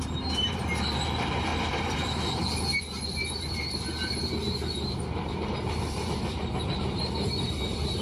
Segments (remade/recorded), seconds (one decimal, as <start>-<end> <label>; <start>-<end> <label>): 0.0-1.5 remade; 1.5-2.8 recorded; 2.8-8.0 remade